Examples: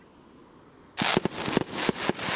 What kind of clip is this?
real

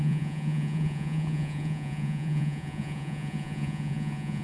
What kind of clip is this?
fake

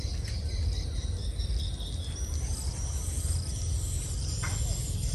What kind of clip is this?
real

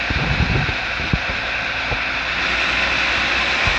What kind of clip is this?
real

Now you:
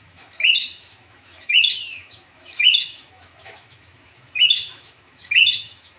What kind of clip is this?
fake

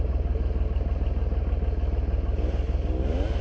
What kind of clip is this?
real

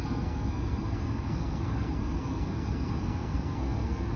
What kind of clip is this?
fake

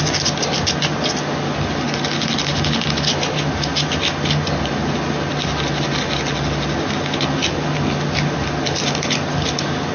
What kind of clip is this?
real